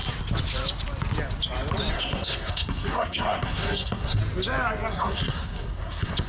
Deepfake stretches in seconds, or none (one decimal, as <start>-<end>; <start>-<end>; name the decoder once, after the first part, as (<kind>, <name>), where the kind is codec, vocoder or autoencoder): 1.9-4.2 (codec, SNAC); 4.9-6.3